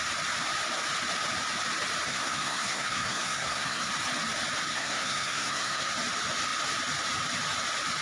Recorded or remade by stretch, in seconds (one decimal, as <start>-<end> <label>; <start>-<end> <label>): 0.0-2.1 recorded; 2.1-3.9 remade; 3.9-4.7 recorded; 4.7-5.9 remade; 5.9-8.0 recorded